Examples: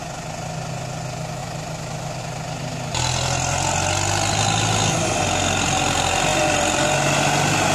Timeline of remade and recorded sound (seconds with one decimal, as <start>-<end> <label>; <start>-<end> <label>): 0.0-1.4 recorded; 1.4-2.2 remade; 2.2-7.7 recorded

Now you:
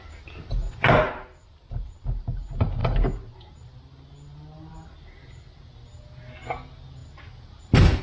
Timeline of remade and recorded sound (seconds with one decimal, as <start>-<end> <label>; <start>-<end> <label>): 0.0-0.6 recorded; 0.6-2.2 remade; 2.2-8.0 recorded

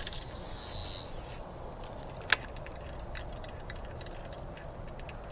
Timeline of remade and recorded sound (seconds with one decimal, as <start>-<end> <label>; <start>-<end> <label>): 0.0-5.3 recorded

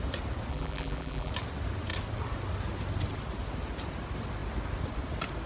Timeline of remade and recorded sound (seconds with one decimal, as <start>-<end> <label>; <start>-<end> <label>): 0.0-0.5 recorded; 0.5-1.3 remade; 1.3-5.5 recorded

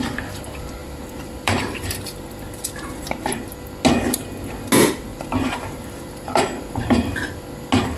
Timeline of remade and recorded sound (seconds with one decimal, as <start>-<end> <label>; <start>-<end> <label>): 0.0-0.8 recorded; 0.8-3.4 remade; 3.4-5.1 recorded; 5.1-7.3 remade; 7.3-8.0 recorded

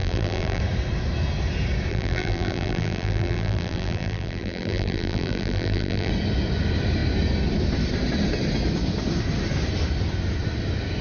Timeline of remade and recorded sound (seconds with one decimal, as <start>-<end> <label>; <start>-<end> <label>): 0.0-0.6 remade; 0.6-1.9 recorded; 1.9-6.1 remade; 6.1-11.0 recorded

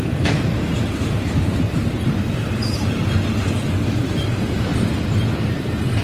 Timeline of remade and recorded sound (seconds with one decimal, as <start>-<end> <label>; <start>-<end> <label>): 0.0-3.0 remade; 3.0-3.8 recorded; 3.8-4.7 remade; 4.7-5.4 recorded; 5.4-6.0 remade